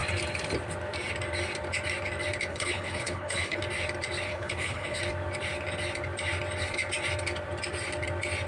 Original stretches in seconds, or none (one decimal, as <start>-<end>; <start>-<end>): 0.0-2.5; 3.6-4.3; 5.0-8.5